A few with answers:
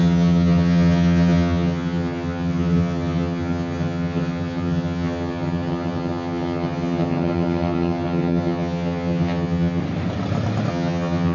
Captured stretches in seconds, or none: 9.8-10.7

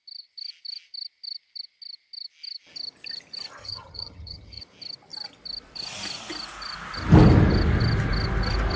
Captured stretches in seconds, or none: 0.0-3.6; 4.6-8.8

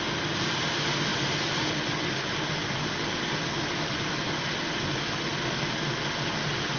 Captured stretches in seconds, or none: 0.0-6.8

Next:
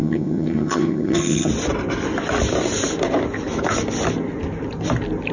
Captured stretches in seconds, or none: 1.5-5.3

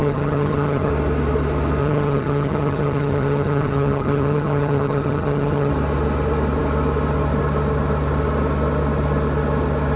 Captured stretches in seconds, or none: 0.9-1.8; 5.7-10.0

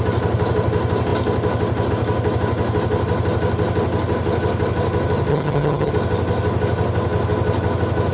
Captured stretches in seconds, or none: 0.0-5.3; 5.9-8.1